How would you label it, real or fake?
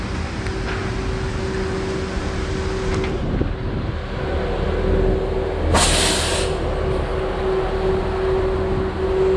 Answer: real